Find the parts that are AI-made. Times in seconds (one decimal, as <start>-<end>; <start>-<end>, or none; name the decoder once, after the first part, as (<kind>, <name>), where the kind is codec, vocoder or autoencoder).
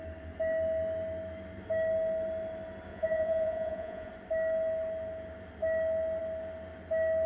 2.9-4.1 (vocoder, Vocos)